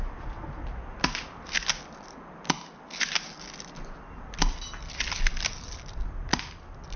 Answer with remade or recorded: recorded